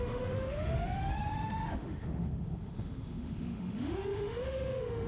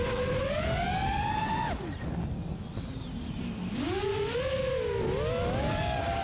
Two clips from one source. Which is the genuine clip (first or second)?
second